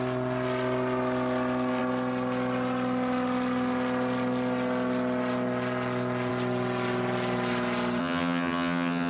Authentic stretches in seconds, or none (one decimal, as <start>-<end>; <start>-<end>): 0.0-8.0